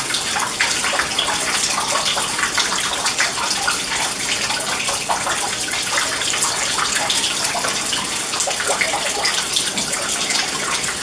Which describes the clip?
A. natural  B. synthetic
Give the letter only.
A